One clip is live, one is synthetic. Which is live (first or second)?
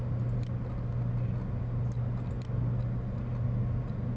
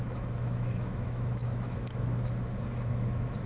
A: first